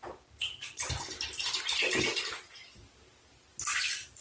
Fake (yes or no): no